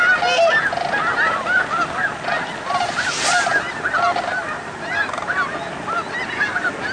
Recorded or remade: recorded